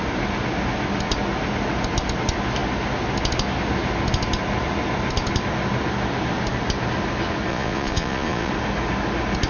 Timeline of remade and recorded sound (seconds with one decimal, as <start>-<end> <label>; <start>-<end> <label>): 0.0-7.5 recorded; 7.5-8.5 remade; 8.5-9.5 recorded